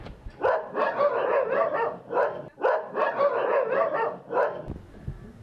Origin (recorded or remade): remade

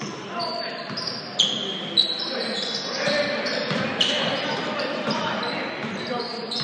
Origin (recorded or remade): remade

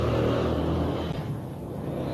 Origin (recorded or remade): recorded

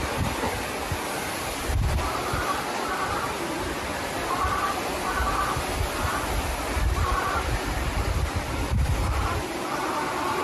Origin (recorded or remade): remade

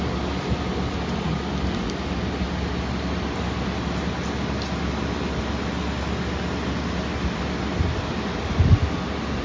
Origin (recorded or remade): recorded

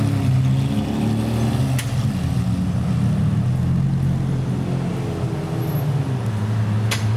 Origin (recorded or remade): recorded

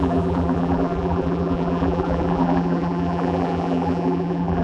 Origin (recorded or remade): remade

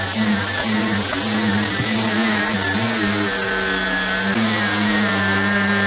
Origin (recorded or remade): recorded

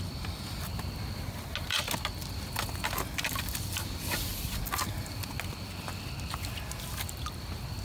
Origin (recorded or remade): recorded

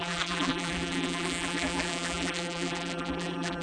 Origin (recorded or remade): remade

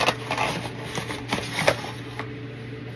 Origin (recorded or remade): recorded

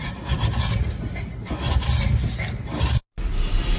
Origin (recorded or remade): recorded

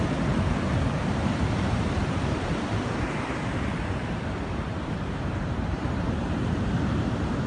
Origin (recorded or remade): remade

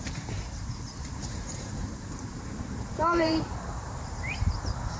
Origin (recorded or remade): remade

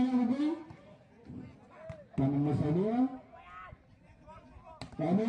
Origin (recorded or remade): recorded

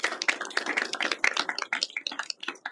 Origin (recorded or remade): recorded